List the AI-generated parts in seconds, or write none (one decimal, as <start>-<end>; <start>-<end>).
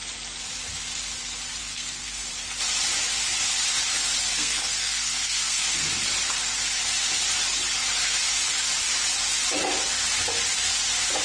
1.6-2.3; 4.3-5.8